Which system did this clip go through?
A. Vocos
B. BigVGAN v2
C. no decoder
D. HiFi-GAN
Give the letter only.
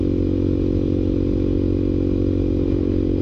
C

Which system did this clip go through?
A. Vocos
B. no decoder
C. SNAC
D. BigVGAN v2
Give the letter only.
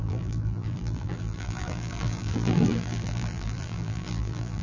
D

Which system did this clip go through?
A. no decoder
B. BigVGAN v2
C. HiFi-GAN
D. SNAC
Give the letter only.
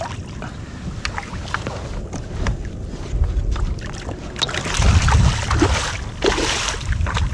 A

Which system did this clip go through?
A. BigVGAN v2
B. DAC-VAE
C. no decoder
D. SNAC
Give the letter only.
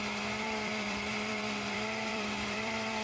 A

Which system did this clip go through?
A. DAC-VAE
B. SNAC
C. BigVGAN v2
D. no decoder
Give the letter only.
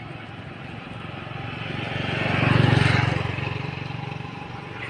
D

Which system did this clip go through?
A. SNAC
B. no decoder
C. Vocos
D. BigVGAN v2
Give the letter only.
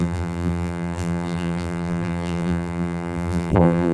D